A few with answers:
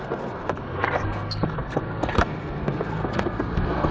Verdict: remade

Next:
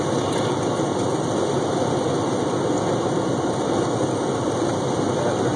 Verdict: recorded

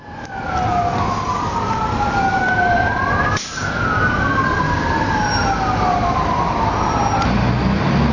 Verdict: recorded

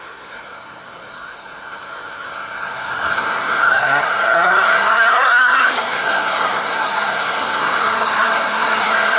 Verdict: remade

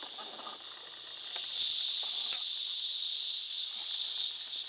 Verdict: recorded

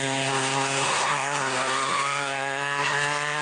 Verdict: remade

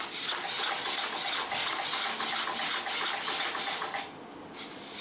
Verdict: recorded